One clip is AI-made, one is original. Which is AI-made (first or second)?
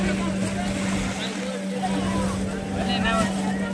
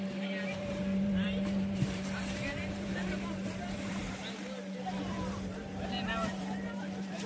second